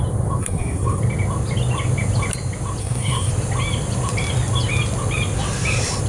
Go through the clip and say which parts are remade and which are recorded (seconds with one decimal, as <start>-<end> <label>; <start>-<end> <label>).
0.0-0.4 recorded; 0.4-1.0 remade; 1.0-2.8 recorded; 2.8-3.3 remade; 3.3-6.1 recorded